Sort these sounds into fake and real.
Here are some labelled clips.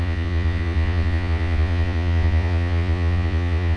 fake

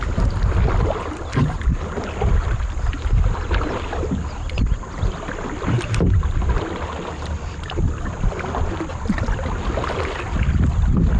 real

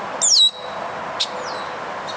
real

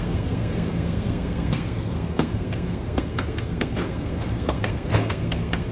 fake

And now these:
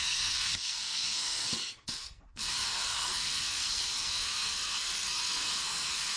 fake